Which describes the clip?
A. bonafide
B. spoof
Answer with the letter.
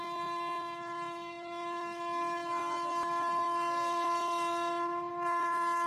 A